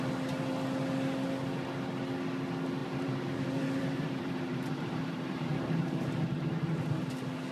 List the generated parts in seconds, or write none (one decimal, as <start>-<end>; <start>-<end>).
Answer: 2.8-6.1